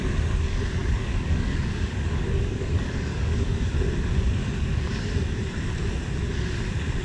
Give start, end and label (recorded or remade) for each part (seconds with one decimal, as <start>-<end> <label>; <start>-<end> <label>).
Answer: 0.0-0.8 recorded; 0.8-3.7 remade; 3.7-4.4 recorded; 4.4-5.4 remade; 5.4-7.0 recorded